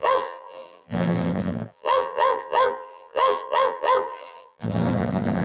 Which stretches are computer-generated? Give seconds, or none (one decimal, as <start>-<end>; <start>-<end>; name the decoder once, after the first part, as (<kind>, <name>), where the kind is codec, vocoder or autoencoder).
0.0-5.4 (vocoder, BigVGAN v2)